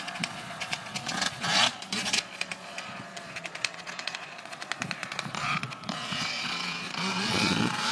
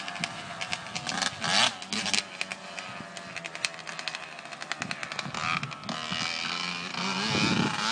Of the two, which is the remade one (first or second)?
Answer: first